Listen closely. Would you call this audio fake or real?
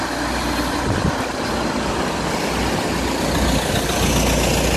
real